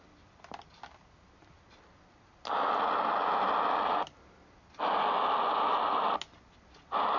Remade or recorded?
recorded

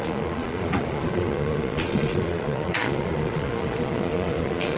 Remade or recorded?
remade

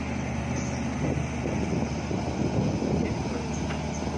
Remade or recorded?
recorded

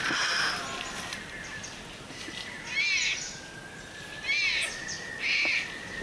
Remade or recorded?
recorded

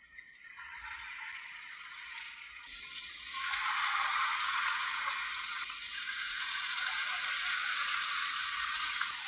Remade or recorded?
remade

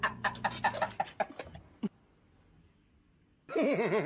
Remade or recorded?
recorded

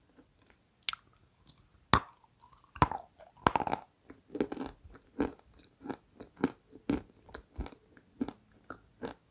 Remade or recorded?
recorded